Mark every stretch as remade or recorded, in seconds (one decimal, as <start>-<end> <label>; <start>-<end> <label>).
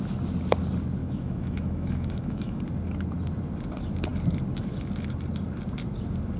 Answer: 0.0-1.0 recorded; 1.0-2.6 remade; 2.6-6.4 recorded